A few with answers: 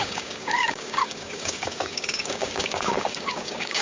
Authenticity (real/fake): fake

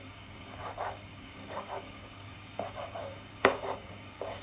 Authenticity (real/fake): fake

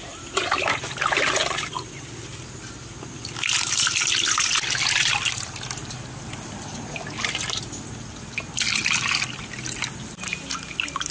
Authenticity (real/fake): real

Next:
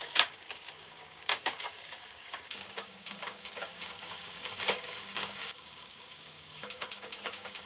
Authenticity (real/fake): fake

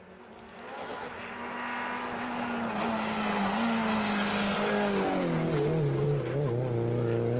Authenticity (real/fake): real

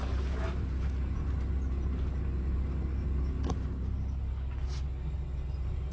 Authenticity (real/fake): real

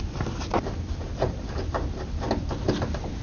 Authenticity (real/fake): real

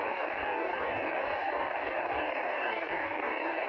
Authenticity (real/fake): fake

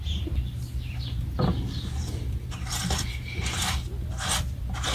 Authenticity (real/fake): real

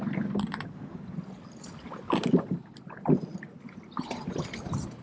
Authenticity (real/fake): real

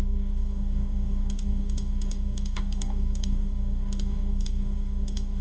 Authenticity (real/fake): fake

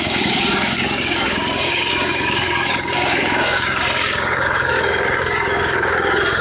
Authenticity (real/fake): fake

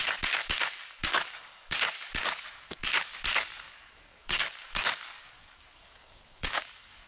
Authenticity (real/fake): fake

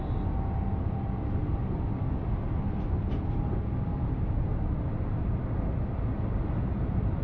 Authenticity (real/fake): real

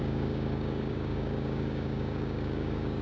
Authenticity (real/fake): fake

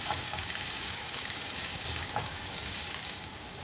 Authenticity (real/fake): fake